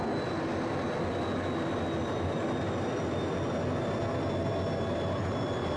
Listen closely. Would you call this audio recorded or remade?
recorded